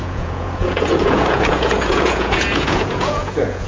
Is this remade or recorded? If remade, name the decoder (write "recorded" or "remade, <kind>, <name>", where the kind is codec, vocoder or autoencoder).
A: remade, vocoder, Vocos